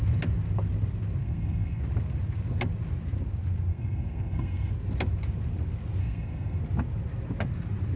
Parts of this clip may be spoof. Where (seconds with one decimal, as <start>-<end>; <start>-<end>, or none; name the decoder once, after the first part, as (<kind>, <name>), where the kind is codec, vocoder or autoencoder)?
1.2-1.8 (codec, SNAC); 3.7-4.7; 6.0-6.6